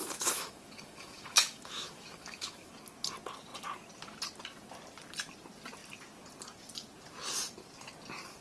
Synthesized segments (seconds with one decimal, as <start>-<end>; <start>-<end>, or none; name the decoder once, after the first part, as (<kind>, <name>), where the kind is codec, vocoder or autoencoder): 0.0-2.7 (autoencoder, DAC-VAE)